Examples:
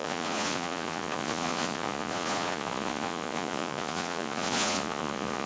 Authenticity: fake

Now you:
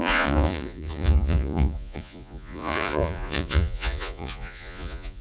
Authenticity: fake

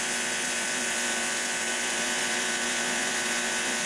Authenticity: fake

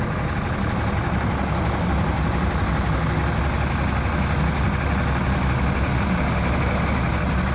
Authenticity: real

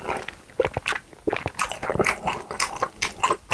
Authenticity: real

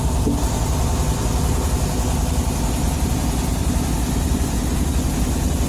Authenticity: real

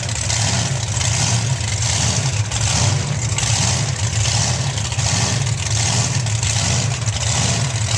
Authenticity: real